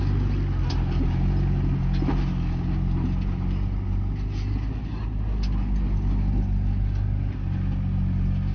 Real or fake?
real